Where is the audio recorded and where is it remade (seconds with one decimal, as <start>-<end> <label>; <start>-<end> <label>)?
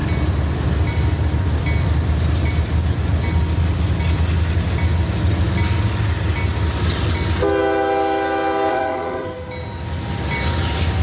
0.0-8.7 recorded; 8.7-9.3 remade; 9.3-11.0 recorded